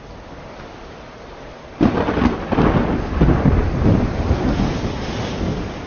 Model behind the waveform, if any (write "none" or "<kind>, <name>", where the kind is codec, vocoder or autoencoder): none